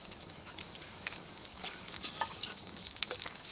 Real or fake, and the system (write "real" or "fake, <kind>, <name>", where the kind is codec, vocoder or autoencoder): fake, codec, DAC